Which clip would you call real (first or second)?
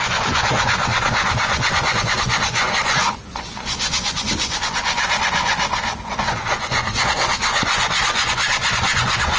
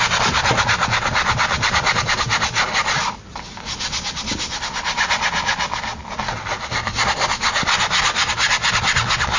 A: second